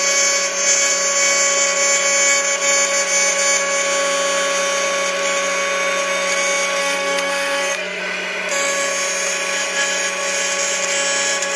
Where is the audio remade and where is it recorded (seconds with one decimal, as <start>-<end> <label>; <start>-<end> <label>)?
0.0-6.8 recorded; 6.8-8.0 remade; 8.0-11.6 recorded

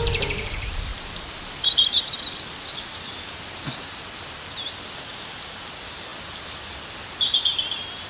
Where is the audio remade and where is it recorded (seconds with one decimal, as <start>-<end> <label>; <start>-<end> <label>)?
0.0-8.1 recorded